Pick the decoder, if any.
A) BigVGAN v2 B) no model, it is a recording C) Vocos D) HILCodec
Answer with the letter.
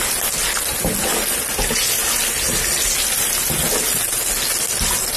B